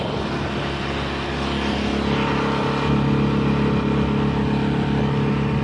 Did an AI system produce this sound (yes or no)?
no